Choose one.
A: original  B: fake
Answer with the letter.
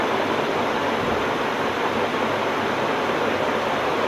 B